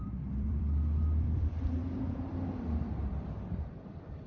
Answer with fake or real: fake